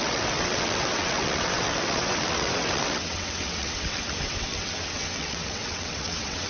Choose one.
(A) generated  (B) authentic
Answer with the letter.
A